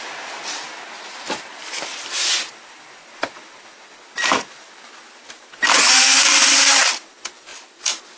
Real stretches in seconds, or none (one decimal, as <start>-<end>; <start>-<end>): 0.0-8.2